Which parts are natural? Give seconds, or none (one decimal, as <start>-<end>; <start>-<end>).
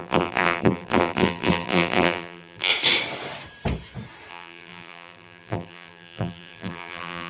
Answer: 2.7-4.3